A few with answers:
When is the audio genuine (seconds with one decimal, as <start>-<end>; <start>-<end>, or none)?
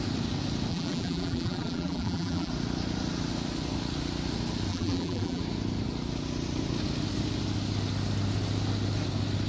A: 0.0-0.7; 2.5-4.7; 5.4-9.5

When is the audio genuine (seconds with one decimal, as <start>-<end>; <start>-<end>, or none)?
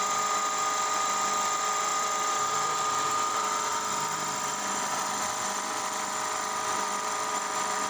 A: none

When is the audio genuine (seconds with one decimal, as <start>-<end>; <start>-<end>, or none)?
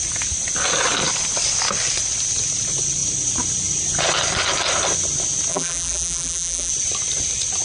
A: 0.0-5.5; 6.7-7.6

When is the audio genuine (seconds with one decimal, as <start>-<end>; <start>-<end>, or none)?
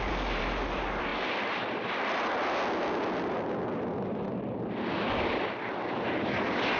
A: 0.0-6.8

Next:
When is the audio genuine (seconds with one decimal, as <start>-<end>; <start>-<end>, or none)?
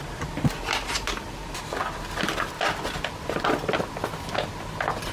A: 1.8-5.1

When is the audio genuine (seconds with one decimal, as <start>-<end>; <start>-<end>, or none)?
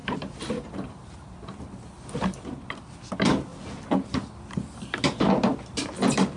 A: 1.3-6.4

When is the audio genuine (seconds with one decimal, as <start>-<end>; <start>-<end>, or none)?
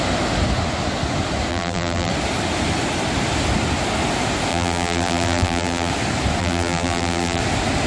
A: 0.0-1.5; 2.1-4.5; 5.9-6.4; 7.4-7.9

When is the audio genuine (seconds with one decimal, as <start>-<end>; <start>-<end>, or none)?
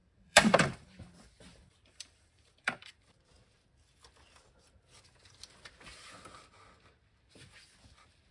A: 1.1-1.5; 2.9-8.3